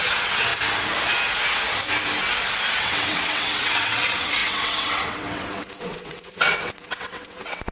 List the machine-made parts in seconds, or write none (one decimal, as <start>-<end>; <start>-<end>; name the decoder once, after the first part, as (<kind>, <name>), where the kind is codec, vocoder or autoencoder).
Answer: 0.0-0.5 (vocoder, WaveNeXt); 2.8-7.7